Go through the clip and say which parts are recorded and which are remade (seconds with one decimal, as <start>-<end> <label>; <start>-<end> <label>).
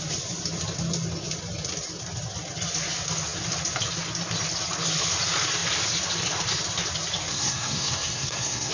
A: 0.0-7.3 recorded; 7.3-8.7 remade